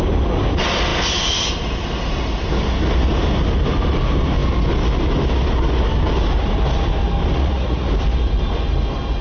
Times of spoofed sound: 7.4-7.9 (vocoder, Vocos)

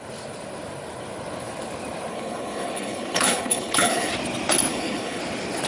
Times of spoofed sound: 2.1-4.1 (codec, HILCodec); 4.7-5.2

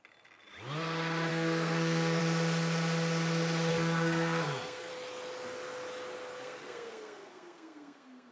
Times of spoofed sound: 1.3-2.2 (codec, SNAC); 3.7-4.9; 6.3-8.3

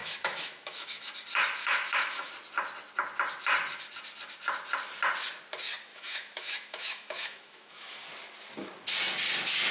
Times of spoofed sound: 0.0-1.1 (autoencoder, DAC-VAE); 1.6-2.3; 5.9-8.0

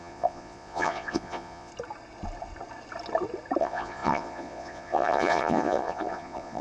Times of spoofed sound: 0.0-1.7 (vocoder, Vocos); 3.6-6.6

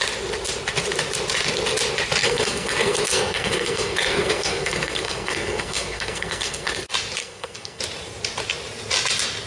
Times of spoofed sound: 2.2-6.8 (codec, SNAC); 7.2-7.8

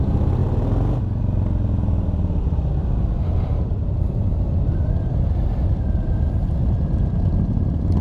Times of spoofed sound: none